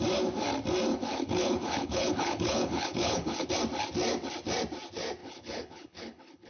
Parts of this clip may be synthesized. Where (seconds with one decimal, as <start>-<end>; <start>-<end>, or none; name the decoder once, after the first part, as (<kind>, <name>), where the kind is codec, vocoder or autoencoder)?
0.9-3.5 (codec, HILCodec); 5.2-6.5

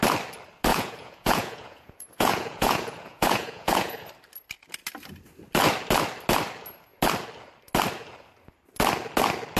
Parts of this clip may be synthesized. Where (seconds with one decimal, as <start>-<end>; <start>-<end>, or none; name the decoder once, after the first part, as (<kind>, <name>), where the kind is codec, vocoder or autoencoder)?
0.7-4.1 (vocoder, Vocos)

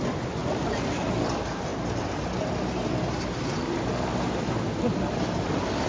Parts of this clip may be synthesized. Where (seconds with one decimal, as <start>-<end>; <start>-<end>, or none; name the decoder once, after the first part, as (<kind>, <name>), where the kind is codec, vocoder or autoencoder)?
0.0-0.4 (vocoder, BigVGAN v2); 1.2-1.7; 2.7-5.9